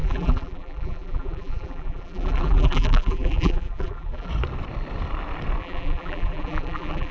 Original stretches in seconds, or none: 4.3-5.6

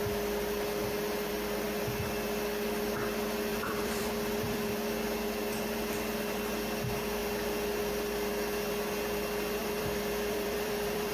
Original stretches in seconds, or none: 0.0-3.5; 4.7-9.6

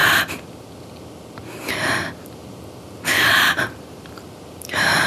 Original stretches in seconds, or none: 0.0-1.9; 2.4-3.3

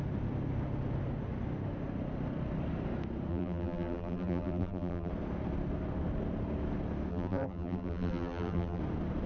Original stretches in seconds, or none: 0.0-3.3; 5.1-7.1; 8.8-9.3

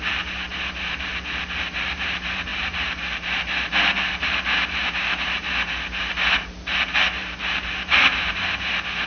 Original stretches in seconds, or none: none